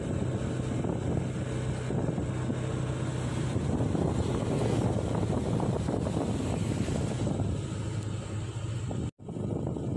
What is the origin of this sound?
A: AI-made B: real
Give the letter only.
B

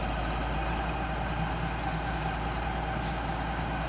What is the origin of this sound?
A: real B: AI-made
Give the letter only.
A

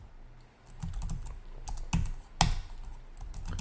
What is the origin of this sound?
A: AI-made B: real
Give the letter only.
B